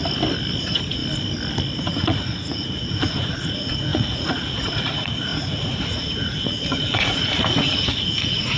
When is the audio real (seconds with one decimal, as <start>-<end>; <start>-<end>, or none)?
0.0-0.6; 1.0-1.8